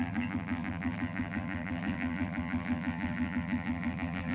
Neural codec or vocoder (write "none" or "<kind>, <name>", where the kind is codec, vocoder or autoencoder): vocoder, BigVGAN v2